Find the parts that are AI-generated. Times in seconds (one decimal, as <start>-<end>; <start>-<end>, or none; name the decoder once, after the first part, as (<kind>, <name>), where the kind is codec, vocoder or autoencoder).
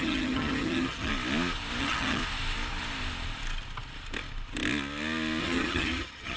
0.0-1.1 (vocoder, HiFi-GAN); 1.8-2.2; 5.4-6.4